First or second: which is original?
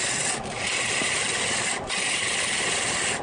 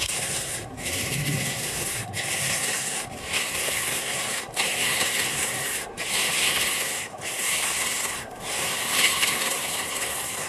first